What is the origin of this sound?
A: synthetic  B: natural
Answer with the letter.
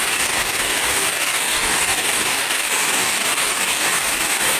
A